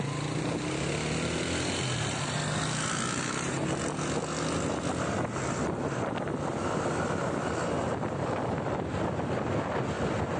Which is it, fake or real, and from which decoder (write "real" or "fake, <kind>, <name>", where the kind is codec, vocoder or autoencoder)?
real